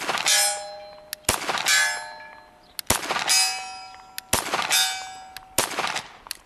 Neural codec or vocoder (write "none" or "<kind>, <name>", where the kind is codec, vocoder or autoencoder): none